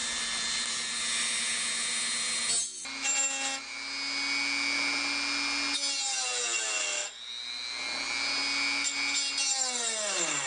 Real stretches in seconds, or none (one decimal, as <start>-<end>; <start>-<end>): 0.0-10.5